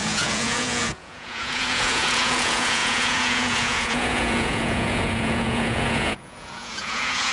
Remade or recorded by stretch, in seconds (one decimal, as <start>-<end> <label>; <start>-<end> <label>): 0.0-7.3 remade